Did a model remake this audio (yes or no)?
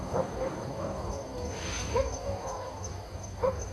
yes